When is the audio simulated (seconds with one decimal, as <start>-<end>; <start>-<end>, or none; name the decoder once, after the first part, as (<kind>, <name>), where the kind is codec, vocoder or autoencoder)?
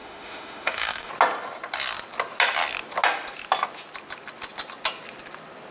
0.0-1.1 (autoencoder, DAC-VAE)